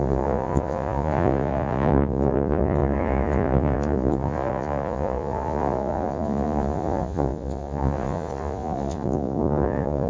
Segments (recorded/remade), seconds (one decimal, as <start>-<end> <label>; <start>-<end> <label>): 0.0-10.1 remade